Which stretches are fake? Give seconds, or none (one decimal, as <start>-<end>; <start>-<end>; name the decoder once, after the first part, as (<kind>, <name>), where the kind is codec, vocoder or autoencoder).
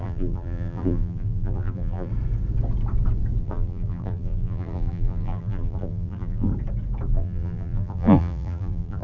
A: 0.0-2.1 (vocoder, BigVGAN v2); 3.4-6.5; 7.1-9.0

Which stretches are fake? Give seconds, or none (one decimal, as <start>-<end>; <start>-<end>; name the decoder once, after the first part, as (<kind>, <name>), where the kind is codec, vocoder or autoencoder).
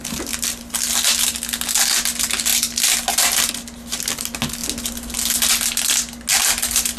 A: none